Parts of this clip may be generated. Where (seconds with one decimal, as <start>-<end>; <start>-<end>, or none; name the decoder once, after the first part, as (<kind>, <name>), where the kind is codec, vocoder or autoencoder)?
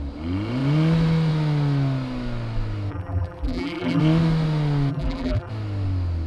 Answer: 2.9-4.0 (vocoder, BigVGAN v2); 4.9-5.5